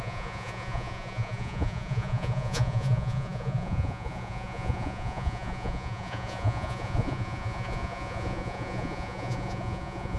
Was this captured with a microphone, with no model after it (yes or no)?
no